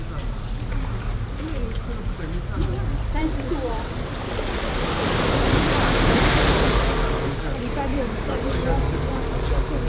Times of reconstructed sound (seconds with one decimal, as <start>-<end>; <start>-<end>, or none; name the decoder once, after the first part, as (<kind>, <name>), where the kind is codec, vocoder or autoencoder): 7.9-9.1 (vocoder, BigVGAN v2)